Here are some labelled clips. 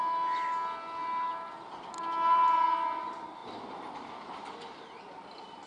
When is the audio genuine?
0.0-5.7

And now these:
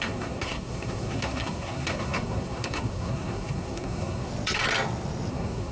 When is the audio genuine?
4.3-5.3

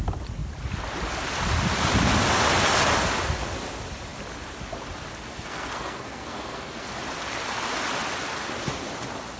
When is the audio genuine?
0.0-5.3; 6.9-9.4

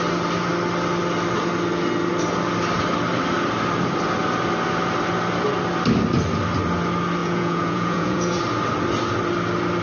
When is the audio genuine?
0.0-7.2; 8.4-9.8